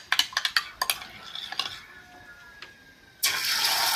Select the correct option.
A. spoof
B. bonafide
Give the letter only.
B